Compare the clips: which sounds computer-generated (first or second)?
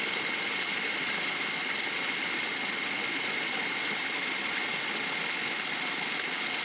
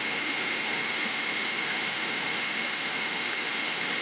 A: second